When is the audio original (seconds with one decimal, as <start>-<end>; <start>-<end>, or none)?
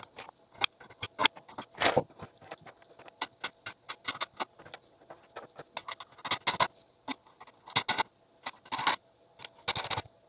0.0-10.3